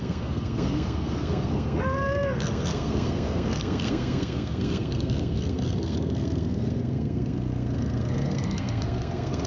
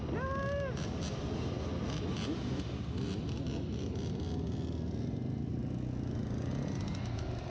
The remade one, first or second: first